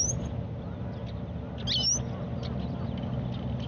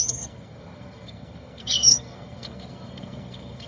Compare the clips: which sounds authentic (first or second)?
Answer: first